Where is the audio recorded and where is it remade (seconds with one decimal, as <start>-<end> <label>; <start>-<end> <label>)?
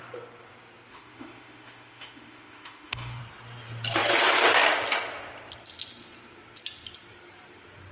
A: 0.0-0.9 recorded; 0.9-3.2 remade; 3.2-7.9 recorded